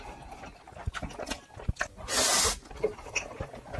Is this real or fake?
real